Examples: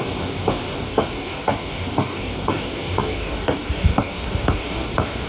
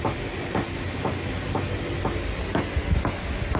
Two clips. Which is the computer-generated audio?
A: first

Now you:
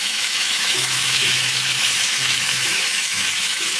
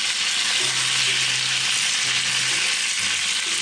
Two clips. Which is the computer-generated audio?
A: first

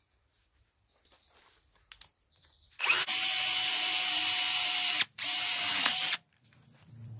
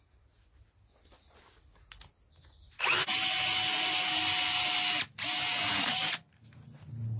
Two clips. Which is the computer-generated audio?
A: first